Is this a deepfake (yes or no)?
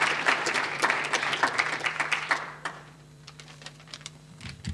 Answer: yes